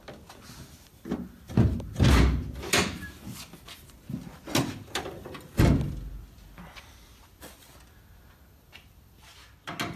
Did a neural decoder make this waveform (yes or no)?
no